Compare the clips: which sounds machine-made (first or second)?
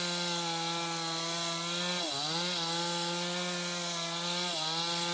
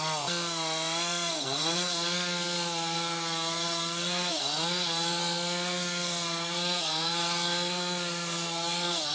second